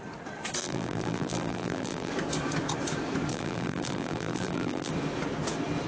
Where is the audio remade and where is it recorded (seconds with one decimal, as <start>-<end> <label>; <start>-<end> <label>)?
0.0-0.6 recorded; 0.6-2.1 remade; 2.1-3.3 recorded; 3.3-4.9 remade; 4.9-5.9 recorded